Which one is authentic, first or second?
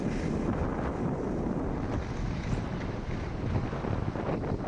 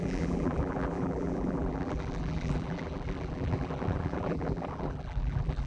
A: first